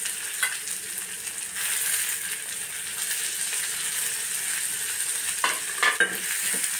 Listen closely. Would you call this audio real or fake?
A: real